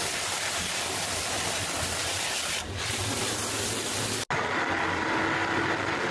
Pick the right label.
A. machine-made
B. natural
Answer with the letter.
B